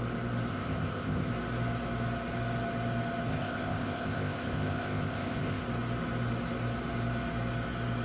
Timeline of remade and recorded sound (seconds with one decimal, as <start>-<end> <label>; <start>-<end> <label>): 0.0-0.5 recorded; 0.5-1.3 remade; 1.3-3.3 recorded; 3.3-5.6 remade; 5.6-8.0 recorded